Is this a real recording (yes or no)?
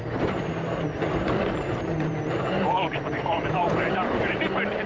no